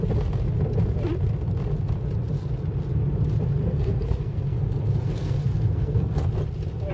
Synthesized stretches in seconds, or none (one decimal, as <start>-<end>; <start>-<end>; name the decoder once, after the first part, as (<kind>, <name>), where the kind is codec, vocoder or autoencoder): 3.6-6.3 (codec, SNAC)